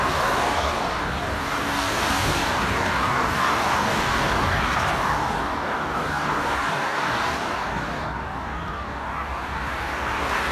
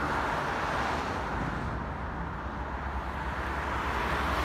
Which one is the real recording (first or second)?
second